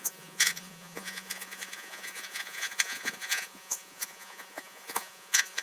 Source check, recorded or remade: remade